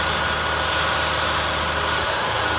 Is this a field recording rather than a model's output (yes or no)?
yes